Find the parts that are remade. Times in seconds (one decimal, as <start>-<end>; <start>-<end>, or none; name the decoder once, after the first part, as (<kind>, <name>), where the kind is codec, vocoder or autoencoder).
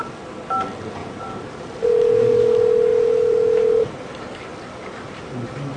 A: 1.0-2.4 (vocoder, BigVGAN v2); 2.9-3.9